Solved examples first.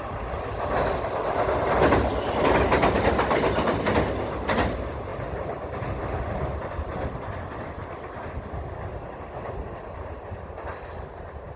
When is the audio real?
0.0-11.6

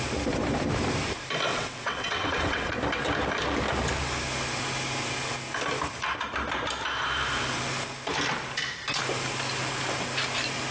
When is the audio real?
0.0-1.5; 2.7-10.7

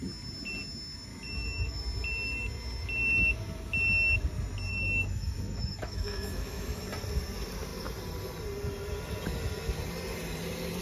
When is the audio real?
0.0-1.1; 1.8-4.7; 6.8-10.8

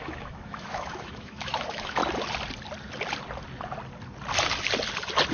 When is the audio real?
2.0-5.3

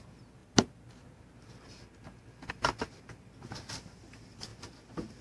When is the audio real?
0.0-5.2